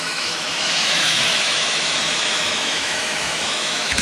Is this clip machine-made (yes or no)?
yes